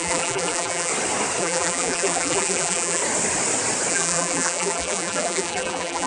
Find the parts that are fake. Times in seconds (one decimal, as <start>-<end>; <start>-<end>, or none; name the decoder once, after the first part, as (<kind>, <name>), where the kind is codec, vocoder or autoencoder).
0.0-0.9 (vocoder, BigVGAN v2); 1.4-3.0; 3.9-6.1